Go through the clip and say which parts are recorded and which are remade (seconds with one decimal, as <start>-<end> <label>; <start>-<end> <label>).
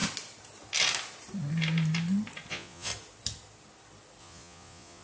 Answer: 0.0-2.5 recorded; 2.5-2.9 remade; 2.9-4.2 recorded; 4.2-5.0 remade